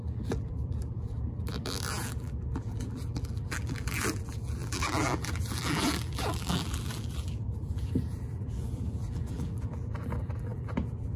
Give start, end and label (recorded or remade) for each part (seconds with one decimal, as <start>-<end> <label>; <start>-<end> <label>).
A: 0.0-11.2 remade